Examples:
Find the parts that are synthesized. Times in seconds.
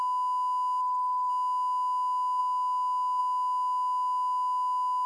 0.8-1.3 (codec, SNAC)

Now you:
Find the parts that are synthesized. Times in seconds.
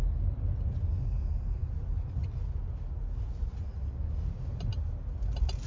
none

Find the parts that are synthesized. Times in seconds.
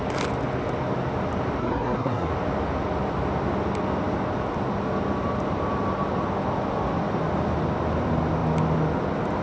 1.6-2.3 (codec, SNAC)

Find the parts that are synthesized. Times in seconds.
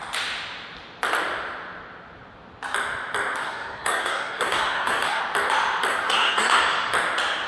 3.4-5.2 (codec, SNAC); 5.9-6.6